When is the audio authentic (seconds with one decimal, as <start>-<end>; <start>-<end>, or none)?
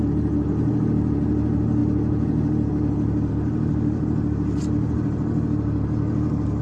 0.0-6.6